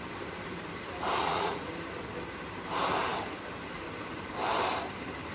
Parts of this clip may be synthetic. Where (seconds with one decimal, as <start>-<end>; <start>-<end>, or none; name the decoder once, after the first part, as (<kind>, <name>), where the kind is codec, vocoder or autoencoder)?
1.2-1.7 (vocoder, Vocos)